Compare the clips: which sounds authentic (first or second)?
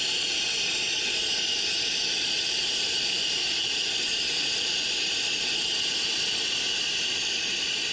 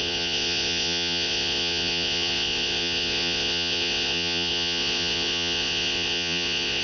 first